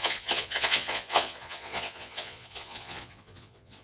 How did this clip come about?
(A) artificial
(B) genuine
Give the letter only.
A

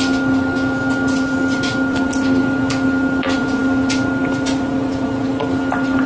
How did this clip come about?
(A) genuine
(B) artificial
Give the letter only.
A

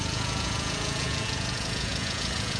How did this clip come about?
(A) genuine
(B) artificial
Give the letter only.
B